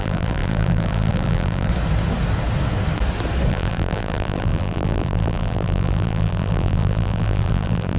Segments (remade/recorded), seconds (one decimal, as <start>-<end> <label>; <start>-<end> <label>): 0.0-1.7 remade; 1.7-3.5 recorded; 3.5-8.0 remade